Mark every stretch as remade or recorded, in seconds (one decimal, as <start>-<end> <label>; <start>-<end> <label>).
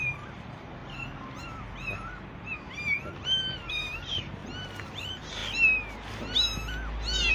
0.0-0.8 remade; 0.8-3.7 recorded; 3.7-4.4 remade; 4.4-5.0 recorded; 5.0-5.4 remade; 5.4-7.3 recorded